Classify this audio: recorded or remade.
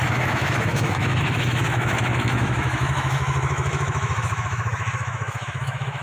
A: remade